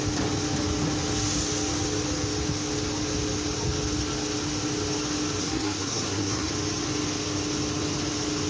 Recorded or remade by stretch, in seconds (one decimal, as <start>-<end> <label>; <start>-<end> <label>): 0.0-5.4 recorded; 5.4-6.5 remade; 6.5-8.5 recorded